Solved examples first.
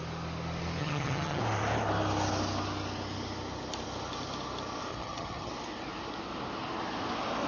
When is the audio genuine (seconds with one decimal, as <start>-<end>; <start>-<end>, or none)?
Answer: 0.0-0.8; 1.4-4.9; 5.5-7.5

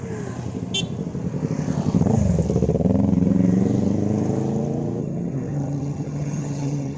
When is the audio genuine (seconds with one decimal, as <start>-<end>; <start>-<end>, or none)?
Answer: 0.0-5.0

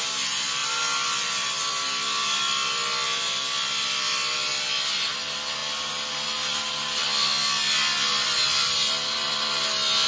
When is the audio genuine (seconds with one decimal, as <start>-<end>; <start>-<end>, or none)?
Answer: 0.0-10.1

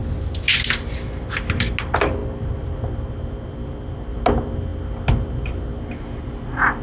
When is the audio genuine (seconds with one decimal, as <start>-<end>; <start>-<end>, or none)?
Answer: 0.0-6.8